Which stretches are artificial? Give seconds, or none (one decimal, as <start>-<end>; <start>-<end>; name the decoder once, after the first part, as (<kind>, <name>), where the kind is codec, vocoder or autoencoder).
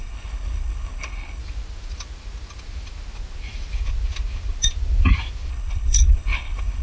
0.0-1.4 (codec, HILCodec); 5.5-6.8